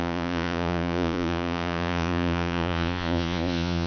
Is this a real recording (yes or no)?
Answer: no